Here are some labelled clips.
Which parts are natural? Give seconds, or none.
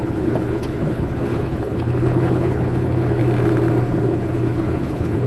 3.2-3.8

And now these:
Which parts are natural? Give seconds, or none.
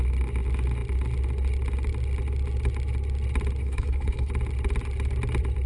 0.0-3.6; 4.3-5.7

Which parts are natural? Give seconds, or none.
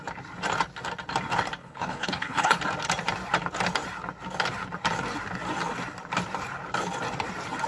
0.0-1.6; 2.6-7.7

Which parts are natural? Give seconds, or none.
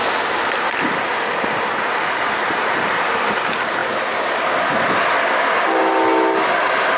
0.0-7.0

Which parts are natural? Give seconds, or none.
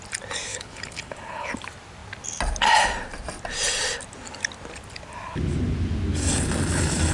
0.0-0.5; 1.5-7.1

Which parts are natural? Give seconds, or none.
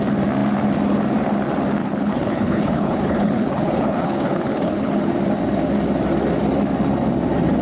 0.0-1.8; 5.1-7.6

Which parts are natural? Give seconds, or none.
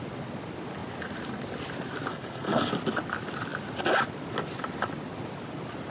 0.0-2.1; 2.7-5.9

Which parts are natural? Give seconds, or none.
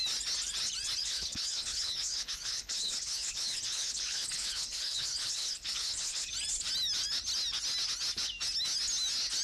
0.0-1.0; 6.3-9.4